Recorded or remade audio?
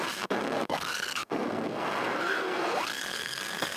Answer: remade